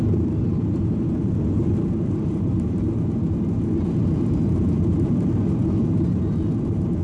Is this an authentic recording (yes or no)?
no